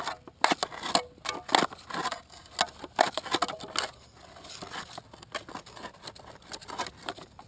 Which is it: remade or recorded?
recorded